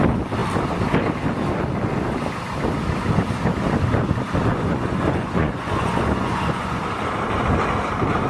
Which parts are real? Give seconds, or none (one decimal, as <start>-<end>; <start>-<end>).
0.0-4.5; 6.8-8.3